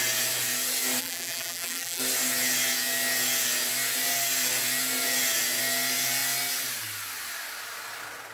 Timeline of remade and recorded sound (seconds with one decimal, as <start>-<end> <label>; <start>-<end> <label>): 0.0-1.0 recorded; 1.0-2.0 remade; 2.0-8.3 recorded

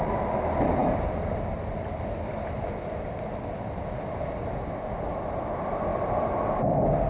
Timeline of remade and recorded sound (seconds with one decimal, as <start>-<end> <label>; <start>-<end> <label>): 0.0-7.1 recorded

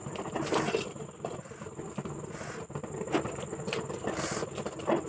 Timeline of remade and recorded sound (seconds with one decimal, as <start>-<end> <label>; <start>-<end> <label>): 0.0-5.1 recorded

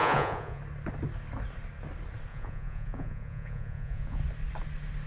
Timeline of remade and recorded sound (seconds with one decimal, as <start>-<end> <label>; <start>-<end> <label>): 0.0-0.6 remade; 0.6-2.3 recorded; 2.3-4.2 remade; 4.2-5.1 recorded

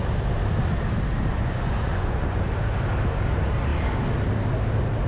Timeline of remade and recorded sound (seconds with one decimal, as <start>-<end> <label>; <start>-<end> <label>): 0.0-1.3 recorded; 1.3-2.4 remade; 2.4-5.1 recorded

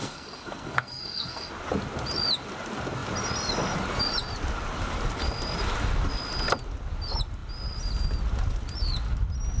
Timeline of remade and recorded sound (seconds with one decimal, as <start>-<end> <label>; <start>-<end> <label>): 0.0-1.5 remade; 1.5-9.6 recorded

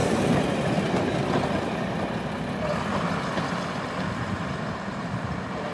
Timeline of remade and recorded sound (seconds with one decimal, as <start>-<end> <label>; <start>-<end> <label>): 0.0-5.7 recorded

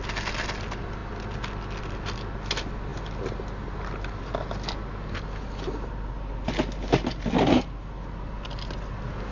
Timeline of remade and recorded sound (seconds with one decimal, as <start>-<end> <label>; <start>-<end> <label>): 0.0-9.3 recorded